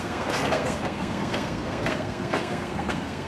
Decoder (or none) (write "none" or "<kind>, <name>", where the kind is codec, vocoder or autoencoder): codec, SNAC